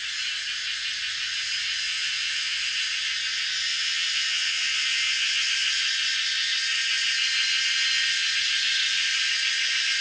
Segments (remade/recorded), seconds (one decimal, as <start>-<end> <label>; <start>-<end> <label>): 0.0-1.8 recorded; 1.8-2.6 remade; 2.6-3.7 recorded; 3.7-5.5 remade; 5.5-10.0 recorded